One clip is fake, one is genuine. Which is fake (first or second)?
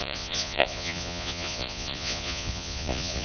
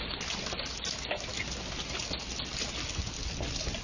first